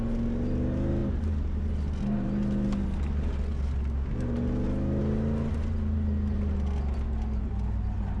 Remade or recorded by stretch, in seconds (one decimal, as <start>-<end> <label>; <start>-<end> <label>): 0.0-8.2 recorded